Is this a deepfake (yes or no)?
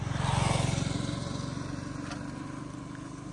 no